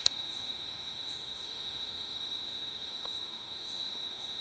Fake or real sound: fake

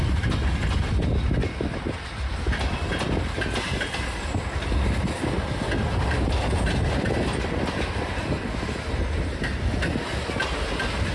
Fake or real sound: real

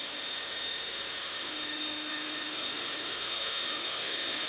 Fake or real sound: fake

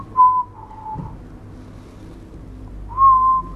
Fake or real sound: real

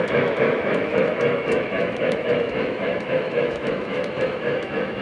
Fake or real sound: fake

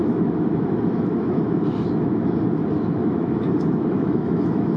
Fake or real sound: fake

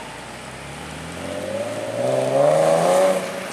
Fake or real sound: real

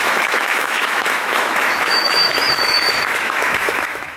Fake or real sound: fake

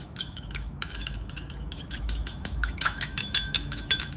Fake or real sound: fake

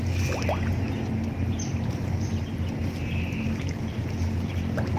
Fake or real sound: real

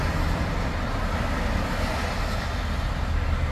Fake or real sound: real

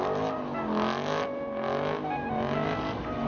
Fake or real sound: real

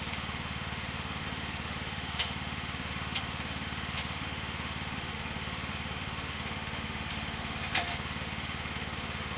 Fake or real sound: fake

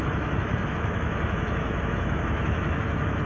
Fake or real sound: fake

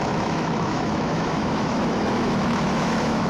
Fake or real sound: fake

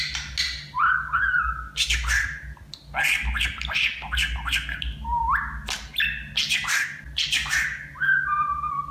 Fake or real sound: real